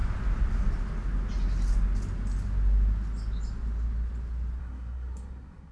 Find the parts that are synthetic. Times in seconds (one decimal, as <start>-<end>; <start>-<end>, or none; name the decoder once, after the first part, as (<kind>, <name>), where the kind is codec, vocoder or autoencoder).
4.6-5.7 (codec, SNAC)

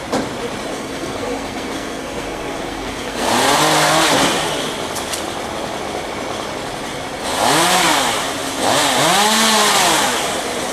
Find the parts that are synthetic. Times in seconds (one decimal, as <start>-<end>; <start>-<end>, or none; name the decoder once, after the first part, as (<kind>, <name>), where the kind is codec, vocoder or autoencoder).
0.7-3.3 (codec, SNAC)

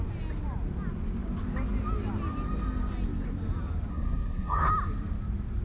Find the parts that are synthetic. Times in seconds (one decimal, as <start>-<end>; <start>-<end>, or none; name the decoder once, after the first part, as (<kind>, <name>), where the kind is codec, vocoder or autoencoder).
3.9-4.7 (codec, SNAC)

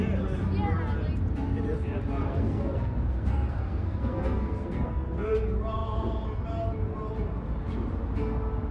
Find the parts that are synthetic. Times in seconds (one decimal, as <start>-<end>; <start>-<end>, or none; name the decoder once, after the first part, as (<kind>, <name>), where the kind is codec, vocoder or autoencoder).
2.2-5.3 (codec, SNAC)